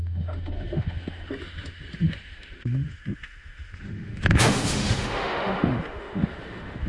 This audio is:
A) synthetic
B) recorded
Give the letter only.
A